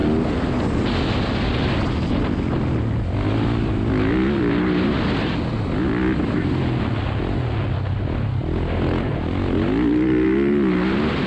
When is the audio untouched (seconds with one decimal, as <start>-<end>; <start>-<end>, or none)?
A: 0.0-11.3